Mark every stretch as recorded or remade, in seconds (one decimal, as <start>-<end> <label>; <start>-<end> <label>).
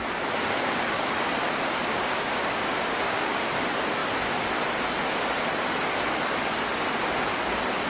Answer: 0.0-1.9 recorded; 1.9-3.4 remade; 3.4-7.9 recorded